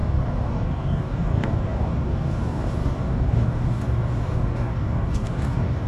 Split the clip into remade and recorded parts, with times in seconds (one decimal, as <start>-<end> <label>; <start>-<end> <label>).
0.0-5.9 remade